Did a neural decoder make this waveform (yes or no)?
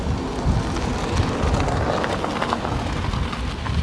no